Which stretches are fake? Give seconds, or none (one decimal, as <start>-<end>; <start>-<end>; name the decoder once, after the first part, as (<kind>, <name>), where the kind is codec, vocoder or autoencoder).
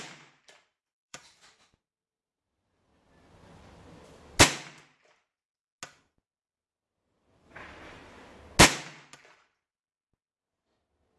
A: 0.0-2.9 (vocoder, BigVGAN v2); 7.4-8.0